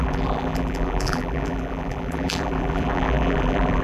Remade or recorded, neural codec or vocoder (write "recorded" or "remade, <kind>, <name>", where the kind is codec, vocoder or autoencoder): remade, vocoder, BigVGAN v2